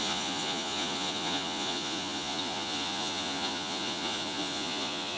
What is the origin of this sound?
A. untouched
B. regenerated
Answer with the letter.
B